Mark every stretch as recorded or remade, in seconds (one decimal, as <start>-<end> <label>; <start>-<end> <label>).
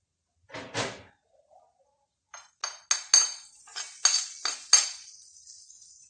0.0-6.1 recorded